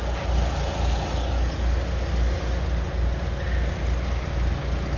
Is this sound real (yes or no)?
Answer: yes